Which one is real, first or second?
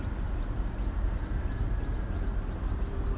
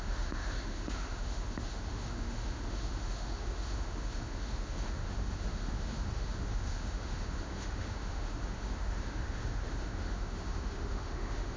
first